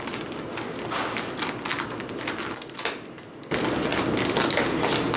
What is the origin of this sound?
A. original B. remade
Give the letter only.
A